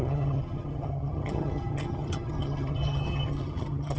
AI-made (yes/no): yes